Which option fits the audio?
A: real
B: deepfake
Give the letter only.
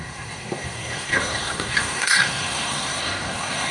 B